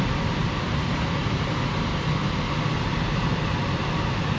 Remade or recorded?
recorded